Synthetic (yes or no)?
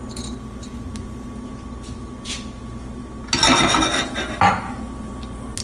no